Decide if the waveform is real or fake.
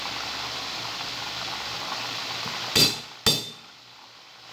real